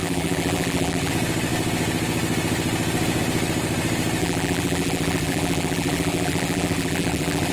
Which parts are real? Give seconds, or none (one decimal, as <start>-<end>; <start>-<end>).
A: 1.1-4.2